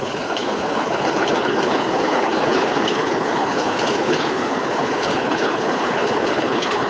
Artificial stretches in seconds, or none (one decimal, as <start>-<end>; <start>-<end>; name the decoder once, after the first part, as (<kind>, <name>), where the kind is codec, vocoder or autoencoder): 0.0-6.9 (codec, HILCodec)